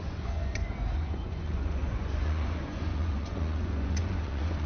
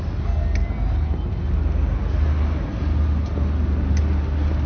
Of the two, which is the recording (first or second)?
second